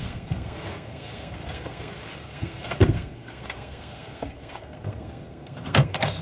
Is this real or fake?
fake